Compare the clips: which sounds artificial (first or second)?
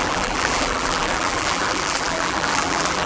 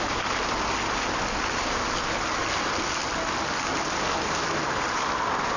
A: first